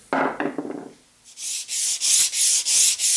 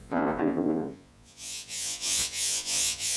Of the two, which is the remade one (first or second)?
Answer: second